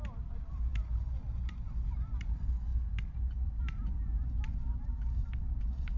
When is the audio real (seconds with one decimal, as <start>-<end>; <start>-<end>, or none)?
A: none